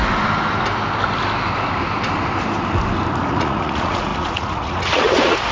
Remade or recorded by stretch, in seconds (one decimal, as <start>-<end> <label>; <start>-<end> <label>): 0.0-3.3 recorded; 3.3-5.5 remade